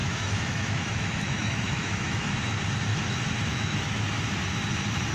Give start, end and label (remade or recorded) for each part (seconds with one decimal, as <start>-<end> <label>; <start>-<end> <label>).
0.0-2.3 remade; 2.3-2.9 recorded; 2.9-4.2 remade; 4.2-5.1 recorded

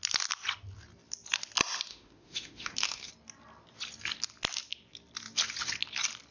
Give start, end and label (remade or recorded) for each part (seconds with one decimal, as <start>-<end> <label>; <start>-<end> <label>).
0.0-1.9 recorded; 1.9-3.1 remade; 3.1-6.3 recorded

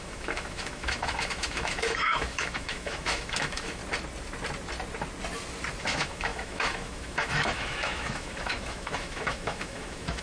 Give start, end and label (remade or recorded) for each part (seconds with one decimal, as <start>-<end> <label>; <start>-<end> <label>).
0.0-3.8 remade; 3.8-5.8 recorded; 5.8-10.2 remade

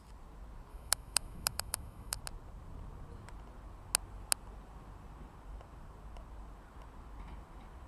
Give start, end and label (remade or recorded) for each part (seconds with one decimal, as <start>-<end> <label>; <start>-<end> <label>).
0.0-0.7 recorded; 0.7-2.2 remade; 2.2-7.9 recorded

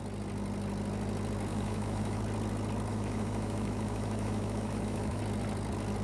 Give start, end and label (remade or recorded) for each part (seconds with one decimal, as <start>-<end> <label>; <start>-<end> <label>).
0.0-1.5 recorded; 1.5-2.2 remade; 2.2-2.9 recorded; 2.9-5.2 remade; 5.2-6.0 recorded